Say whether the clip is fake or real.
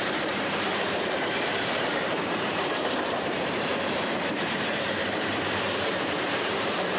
fake